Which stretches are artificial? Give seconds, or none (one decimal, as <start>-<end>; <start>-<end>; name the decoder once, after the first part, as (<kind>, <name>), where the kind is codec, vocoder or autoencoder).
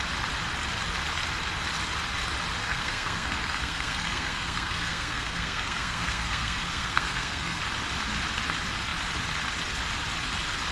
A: 2.6-7.6 (codec, SNAC)